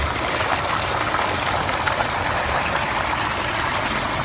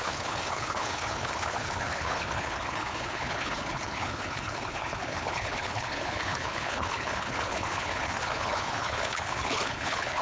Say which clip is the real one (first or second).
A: first